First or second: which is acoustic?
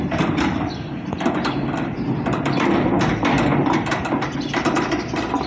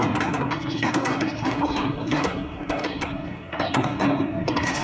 first